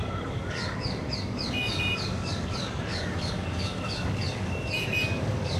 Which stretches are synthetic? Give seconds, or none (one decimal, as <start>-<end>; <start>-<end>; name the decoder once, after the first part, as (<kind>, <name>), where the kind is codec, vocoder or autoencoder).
0.0-5.6 (codec, DAC)